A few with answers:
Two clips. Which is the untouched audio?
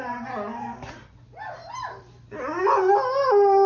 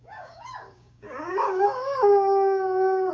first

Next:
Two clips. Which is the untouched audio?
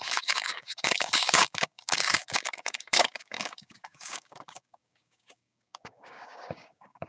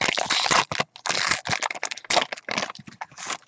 second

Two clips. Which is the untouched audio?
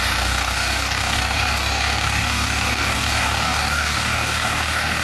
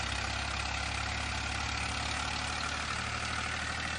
second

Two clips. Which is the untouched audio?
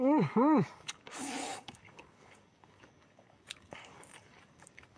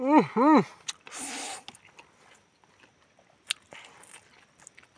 second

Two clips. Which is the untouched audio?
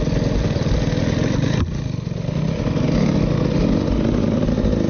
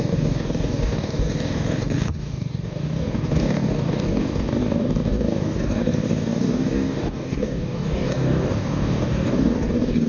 first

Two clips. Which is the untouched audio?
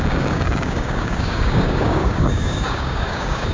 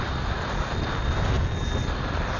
second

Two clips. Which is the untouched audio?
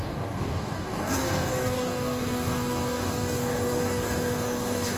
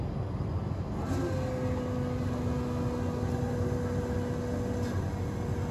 second